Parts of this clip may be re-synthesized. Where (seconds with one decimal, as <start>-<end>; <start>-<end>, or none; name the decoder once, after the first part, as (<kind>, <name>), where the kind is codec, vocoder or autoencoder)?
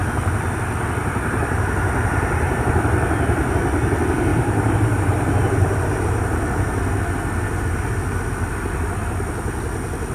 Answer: 1.0-2.7 (vocoder, BigVGAN v2); 4.3-6.2